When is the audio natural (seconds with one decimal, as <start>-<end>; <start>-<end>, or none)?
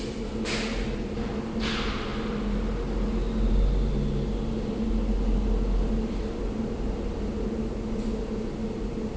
0.0-9.2